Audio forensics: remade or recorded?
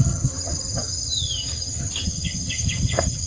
remade